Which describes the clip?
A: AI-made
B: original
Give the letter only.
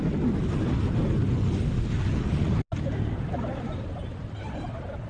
B